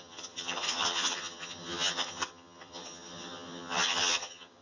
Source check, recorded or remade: remade